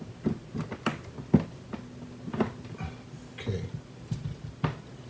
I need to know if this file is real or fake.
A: real